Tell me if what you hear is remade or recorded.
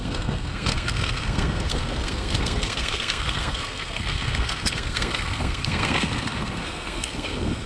remade